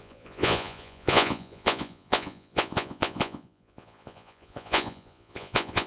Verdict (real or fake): fake